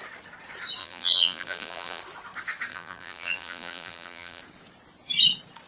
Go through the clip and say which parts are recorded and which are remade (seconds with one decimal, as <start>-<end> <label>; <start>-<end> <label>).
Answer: 0.0-0.8 recorded; 0.8-2.0 remade; 2.0-2.7 recorded; 2.7-4.4 remade; 4.4-5.7 recorded